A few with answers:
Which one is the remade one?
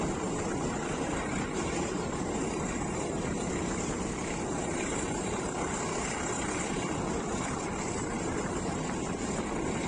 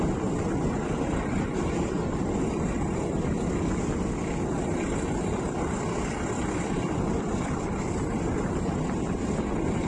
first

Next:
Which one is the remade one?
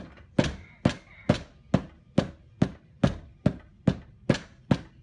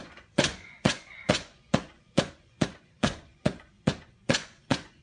second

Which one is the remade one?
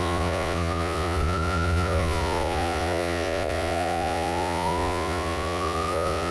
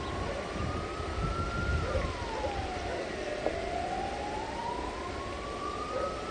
first